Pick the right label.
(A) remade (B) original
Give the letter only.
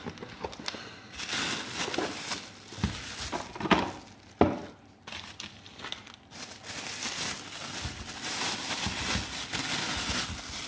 B